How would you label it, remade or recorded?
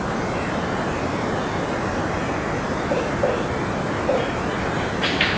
recorded